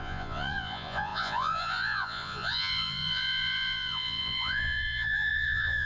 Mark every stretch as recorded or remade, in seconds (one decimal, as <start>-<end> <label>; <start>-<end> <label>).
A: 0.0-5.8 remade